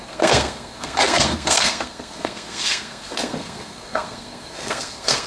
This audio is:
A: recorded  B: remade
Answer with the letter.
B